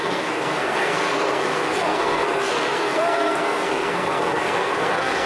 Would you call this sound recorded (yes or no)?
no